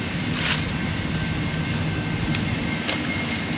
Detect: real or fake real